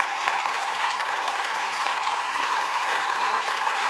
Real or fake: fake